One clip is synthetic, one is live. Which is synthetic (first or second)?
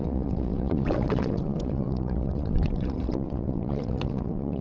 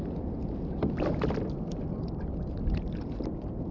first